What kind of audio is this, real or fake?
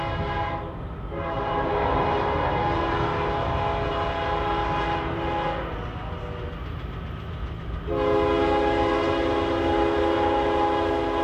real